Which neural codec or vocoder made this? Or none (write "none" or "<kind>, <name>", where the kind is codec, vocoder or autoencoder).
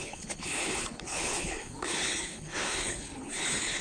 codec, HILCodec